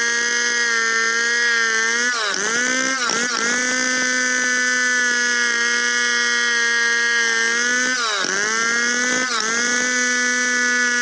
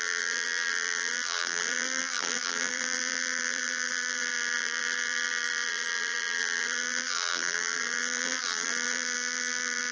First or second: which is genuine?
first